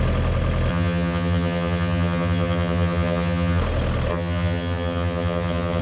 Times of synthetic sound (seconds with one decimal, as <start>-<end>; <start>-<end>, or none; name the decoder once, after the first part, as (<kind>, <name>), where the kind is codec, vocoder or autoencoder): 0.7-3.6 (vocoder, HiFi-GAN); 4.1-5.8